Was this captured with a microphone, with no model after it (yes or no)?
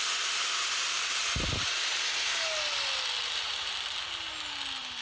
yes